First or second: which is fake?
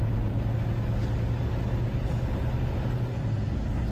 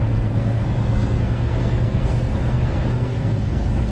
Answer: second